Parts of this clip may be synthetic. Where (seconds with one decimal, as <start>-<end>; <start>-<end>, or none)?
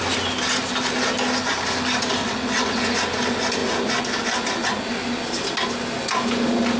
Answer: 2.2-2.8